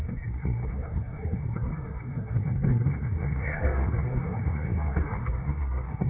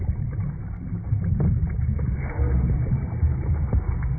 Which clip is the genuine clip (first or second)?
second